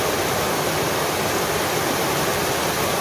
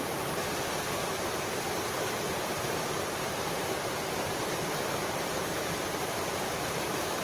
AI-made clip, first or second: second